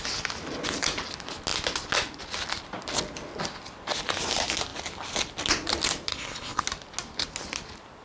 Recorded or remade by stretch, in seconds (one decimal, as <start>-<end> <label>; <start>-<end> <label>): 0.0-6.1 recorded; 6.1-6.6 remade; 6.6-8.0 recorded